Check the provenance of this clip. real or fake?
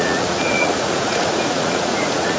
fake